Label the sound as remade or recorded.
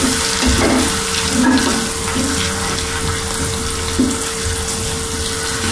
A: recorded